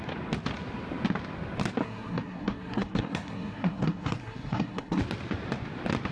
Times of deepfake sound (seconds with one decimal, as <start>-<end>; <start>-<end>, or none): 1.8-5.0